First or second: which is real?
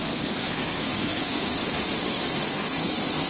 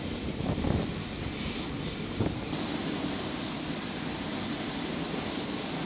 second